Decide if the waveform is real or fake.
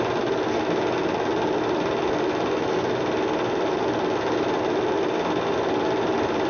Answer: real